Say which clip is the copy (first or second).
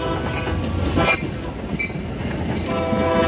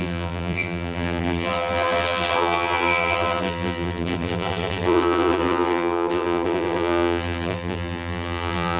second